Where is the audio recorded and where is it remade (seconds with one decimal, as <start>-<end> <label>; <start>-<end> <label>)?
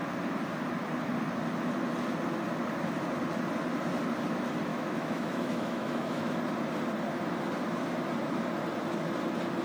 0.0-4.7 recorded; 4.7-6.4 remade; 6.4-9.6 recorded